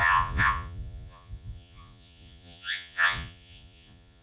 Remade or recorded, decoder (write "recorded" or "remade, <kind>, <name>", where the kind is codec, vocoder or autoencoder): remade, vocoder, Vocos